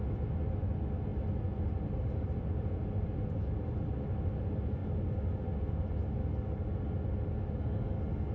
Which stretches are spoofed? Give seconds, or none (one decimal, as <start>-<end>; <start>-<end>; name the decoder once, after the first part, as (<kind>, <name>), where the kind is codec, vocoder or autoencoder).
none